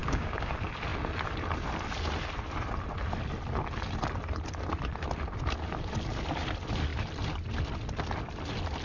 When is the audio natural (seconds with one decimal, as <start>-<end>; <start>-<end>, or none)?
0.5-8.8